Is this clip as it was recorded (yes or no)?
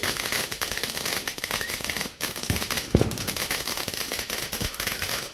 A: no